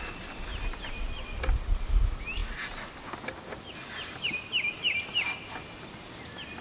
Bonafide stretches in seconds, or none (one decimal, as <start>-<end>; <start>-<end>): 0.0-6.6